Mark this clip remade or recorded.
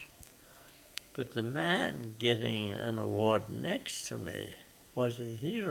remade